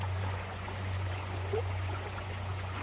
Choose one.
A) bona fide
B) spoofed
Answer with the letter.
B